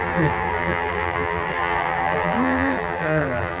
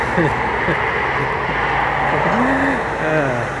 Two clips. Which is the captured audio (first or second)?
second